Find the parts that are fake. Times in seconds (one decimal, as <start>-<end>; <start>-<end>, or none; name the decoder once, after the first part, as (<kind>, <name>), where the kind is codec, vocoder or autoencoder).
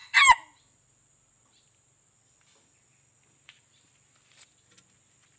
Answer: none